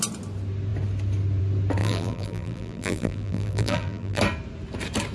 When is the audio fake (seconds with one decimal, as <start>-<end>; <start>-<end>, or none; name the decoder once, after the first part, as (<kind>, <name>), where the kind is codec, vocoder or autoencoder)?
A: 1.8-4.2 (vocoder, BigVGAN v2)